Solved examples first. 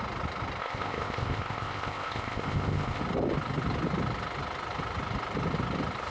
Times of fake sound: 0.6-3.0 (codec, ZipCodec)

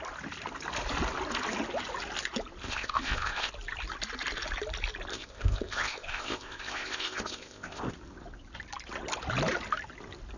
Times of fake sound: 2.6-3.5 (codec, ZipCodec); 5.1-7.9

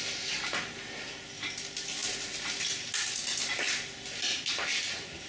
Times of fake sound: none

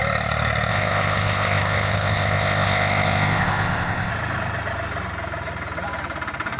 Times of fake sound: 0.7-4.1 (codec, ZipCodec)

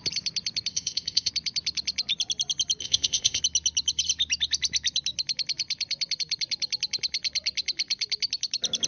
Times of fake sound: 0.7-1.3 (codec, ZipCodec); 2.8-3.4